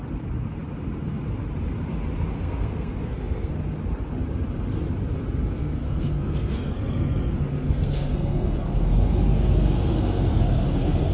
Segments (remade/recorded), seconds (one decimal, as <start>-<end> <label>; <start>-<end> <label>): 0.0-2.3 recorded; 2.3-3.5 remade; 3.5-5.6 recorded; 5.6-11.1 remade